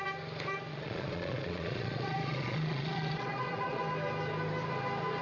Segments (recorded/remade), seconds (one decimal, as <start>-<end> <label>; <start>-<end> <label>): 0.0-0.7 recorded; 0.7-3.8 remade; 3.8-5.2 recorded